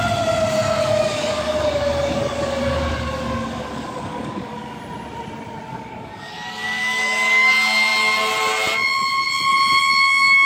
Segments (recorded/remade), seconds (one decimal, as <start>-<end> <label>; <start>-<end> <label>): 0.0-0.8 recorded; 0.8-4.8 remade; 4.8-5.7 recorded; 5.7-7.5 remade; 7.5-10.5 recorded